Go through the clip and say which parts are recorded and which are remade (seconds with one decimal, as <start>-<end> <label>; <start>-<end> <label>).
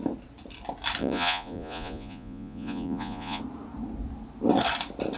0.0-1.0 recorded; 1.0-3.4 remade; 3.4-5.2 recorded